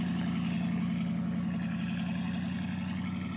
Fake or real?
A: real